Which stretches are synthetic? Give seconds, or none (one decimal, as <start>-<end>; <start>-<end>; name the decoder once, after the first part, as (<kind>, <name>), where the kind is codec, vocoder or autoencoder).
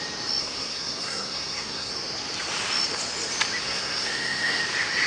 0.4-1.9 (codec, SNAC); 3.6-4.6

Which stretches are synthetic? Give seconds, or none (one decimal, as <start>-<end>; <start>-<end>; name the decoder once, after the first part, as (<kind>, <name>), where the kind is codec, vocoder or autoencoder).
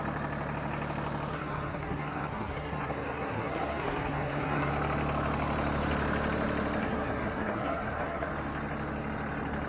1.3-4.7 (codec, SNAC); 6.8-8.3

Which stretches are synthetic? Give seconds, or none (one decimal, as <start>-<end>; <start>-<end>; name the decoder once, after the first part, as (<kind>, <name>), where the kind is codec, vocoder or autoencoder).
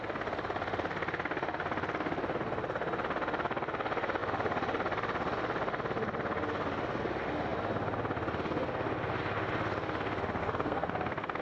10.4-11.4 (codec, SNAC)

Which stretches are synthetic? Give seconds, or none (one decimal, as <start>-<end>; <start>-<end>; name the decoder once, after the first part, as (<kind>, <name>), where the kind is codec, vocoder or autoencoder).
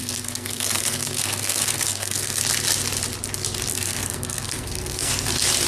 0.0-2.4 (codec, SNAC); 3.7-5.1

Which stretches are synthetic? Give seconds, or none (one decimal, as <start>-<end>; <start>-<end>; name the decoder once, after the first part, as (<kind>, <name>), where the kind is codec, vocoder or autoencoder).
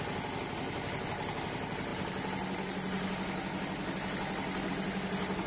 none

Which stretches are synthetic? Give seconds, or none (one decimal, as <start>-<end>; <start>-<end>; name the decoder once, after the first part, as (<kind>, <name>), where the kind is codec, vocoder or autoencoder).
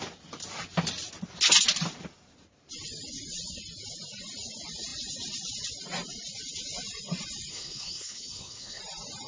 7.5-8.8 (codec, SNAC)